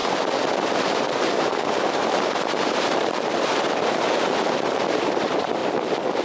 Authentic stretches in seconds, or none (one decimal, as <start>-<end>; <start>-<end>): 0.0-1.0; 5.6-6.2